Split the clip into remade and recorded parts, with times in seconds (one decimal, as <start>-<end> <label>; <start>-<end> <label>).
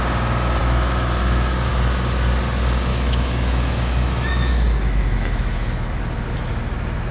0.0-0.6 recorded; 0.6-1.7 remade; 1.7-2.9 recorded; 2.9-6.0 remade; 6.0-7.1 recorded